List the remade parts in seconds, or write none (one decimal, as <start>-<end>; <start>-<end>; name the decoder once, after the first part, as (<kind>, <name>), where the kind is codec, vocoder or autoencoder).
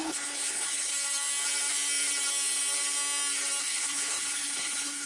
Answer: 0.0-0.9 (codec, HILCodec); 3.6-5.1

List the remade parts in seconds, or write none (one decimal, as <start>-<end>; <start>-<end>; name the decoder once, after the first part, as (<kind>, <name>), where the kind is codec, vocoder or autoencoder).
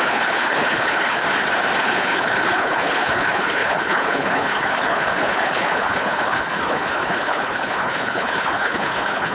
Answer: 0.0-1.2 (codec, HILCodec); 1.8-9.3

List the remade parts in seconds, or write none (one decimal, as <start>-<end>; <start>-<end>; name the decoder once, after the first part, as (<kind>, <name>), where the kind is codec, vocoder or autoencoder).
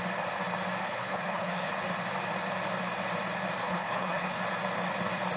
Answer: 0.8-1.7 (codec, HILCodec); 3.6-4.4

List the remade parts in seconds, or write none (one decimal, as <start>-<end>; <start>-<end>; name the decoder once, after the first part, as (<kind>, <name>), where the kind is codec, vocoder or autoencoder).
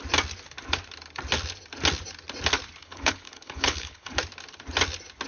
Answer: 2.8-4.2 (codec, HILCodec)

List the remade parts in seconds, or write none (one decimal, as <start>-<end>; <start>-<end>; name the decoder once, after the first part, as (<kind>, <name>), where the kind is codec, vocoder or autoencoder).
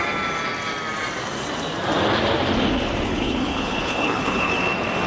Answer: 3.1-4.5 (codec, HILCodec)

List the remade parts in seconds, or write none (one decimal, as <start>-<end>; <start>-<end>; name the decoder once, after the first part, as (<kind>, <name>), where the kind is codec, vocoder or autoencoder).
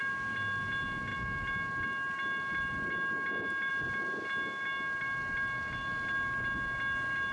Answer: none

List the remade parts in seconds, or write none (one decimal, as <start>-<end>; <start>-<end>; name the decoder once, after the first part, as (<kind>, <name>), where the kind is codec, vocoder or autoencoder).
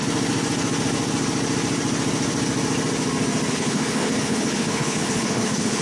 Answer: 3.5-5.8 (codec, HILCodec)